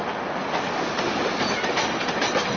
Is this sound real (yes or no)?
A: yes